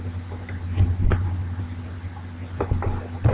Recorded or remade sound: recorded